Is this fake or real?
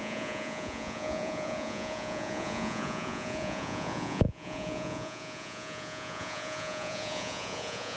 fake